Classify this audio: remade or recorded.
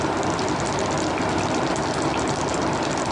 recorded